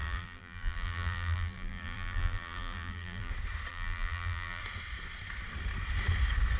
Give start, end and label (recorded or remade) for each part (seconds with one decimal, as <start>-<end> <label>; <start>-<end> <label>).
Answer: 0.0-3.3 remade; 3.3-3.7 recorded; 3.7-4.6 remade; 4.6-6.6 recorded